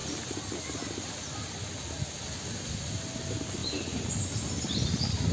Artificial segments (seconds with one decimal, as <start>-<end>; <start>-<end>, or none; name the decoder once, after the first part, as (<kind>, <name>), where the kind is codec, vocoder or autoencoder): 3.6-4.1 (vocoder, BigVGAN v2)